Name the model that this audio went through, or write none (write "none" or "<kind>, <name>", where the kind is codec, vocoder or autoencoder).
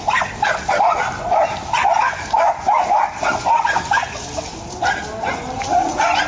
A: none